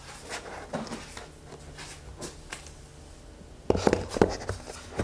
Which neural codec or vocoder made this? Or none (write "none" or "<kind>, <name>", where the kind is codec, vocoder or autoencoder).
none